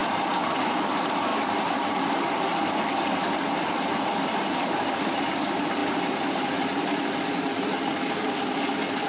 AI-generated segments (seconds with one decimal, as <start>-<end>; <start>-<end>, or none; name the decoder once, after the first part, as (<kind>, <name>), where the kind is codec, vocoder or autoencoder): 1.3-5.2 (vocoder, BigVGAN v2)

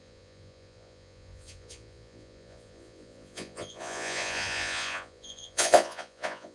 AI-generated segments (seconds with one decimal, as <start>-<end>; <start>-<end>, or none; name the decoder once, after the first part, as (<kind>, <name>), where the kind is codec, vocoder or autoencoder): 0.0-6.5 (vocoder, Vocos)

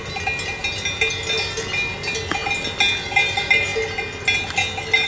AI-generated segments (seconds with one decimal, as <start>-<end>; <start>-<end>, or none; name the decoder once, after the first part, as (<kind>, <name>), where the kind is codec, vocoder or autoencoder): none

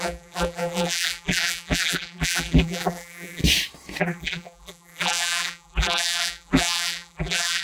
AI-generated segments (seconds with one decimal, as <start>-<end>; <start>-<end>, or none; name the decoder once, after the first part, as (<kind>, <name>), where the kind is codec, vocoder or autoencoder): 0.0-3.4 (vocoder, BigVGAN v2); 4.0-7.6

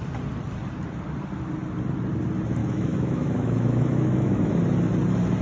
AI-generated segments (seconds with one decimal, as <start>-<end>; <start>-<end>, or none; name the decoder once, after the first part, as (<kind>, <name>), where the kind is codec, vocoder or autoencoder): 2.6-4.5 (autoencoder, DAC-VAE)